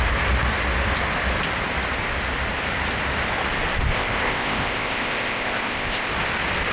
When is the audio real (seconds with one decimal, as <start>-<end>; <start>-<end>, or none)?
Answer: 0.0-3.9; 6.1-6.7